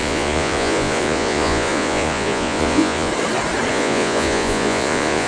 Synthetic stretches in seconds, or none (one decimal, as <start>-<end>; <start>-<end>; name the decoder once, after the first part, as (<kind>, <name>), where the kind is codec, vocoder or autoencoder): 0.0-3.1 (vocoder, Vocos); 3.7-5.3